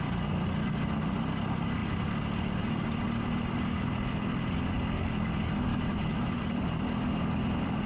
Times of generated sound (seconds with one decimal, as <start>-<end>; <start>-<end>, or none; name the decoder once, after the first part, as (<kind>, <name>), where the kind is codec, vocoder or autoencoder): 5.7-6.3 (autoencoder, DAC-VAE)